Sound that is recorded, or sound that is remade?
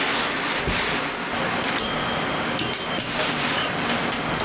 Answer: recorded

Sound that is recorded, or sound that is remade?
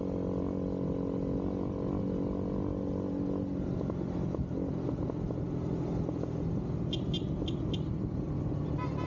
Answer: recorded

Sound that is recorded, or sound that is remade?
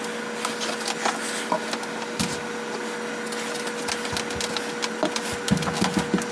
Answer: recorded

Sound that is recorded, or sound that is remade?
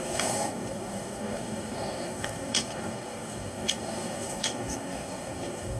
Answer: remade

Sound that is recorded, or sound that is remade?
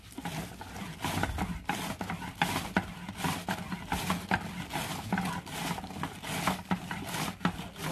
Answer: recorded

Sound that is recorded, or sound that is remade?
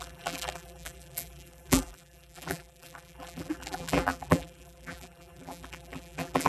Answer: remade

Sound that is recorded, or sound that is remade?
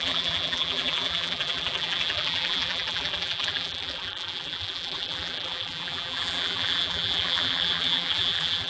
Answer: remade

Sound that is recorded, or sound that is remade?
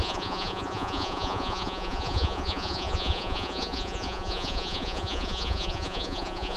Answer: remade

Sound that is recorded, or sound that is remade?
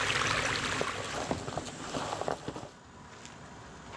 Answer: recorded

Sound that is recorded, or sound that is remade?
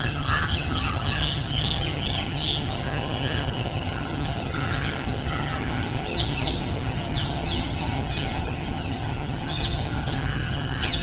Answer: remade